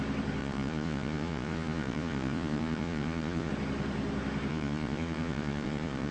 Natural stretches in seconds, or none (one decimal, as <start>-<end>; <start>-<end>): 0.0-0.4; 3.5-4.5